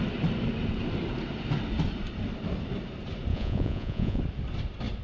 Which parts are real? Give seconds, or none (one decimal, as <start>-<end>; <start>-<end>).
0.0-3.3; 4.2-5.0